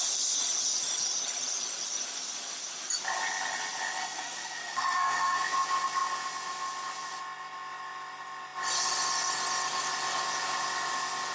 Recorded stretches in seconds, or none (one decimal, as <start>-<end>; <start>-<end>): 0.0-4.0; 5.4-11.3